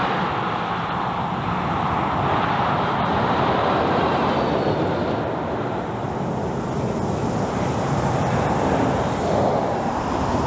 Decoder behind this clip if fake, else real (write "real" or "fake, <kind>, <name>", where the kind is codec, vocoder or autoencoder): real